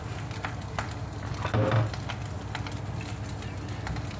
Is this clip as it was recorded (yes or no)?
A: yes